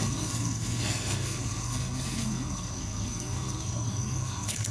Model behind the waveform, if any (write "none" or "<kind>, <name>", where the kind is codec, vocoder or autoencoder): codec, SNAC